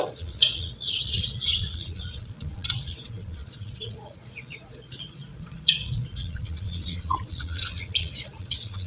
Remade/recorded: remade